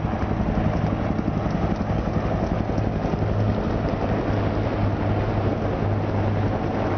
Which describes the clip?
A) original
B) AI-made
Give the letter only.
A